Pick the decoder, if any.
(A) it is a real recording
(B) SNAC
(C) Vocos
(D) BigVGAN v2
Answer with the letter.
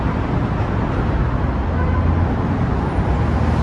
A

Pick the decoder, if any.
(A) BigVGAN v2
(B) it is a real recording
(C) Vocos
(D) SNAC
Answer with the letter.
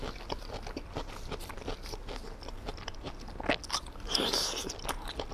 B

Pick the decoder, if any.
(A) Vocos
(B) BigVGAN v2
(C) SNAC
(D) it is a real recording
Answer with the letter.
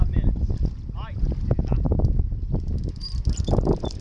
D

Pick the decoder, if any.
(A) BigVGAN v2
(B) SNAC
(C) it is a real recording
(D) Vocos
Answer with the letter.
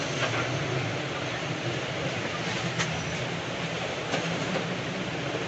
C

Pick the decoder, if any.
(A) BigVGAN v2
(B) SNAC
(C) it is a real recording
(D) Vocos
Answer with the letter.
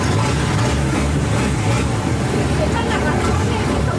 C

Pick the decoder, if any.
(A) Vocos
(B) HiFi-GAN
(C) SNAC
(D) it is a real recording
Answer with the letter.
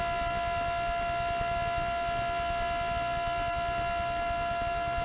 D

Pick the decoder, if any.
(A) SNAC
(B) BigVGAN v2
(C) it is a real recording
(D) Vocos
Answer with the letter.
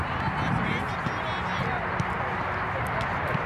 C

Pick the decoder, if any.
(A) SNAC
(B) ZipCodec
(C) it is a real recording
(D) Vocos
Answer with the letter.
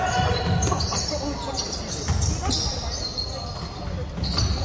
C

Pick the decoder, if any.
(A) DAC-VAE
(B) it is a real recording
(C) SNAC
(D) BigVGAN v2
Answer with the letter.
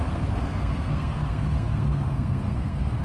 C